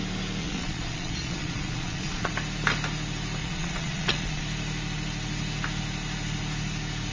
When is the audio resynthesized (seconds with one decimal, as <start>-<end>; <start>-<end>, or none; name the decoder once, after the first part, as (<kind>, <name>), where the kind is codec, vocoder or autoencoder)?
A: 0.4-2.3 (vocoder, Vocos); 3.4-4.4